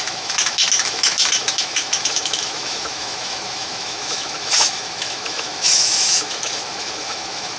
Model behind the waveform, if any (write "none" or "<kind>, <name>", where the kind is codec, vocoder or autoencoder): autoencoder, DAC-VAE